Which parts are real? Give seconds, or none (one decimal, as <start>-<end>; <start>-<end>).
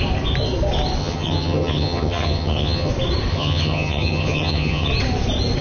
0.0-1.0; 2.9-3.3; 4.9-5.6